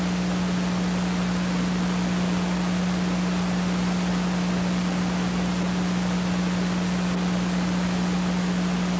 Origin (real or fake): real